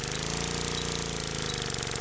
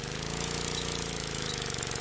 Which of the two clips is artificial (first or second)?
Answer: second